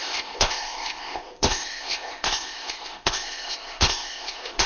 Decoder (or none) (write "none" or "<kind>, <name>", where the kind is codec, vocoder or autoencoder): codec, ZipCodec